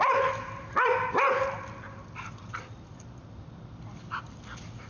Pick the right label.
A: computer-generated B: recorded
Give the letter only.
B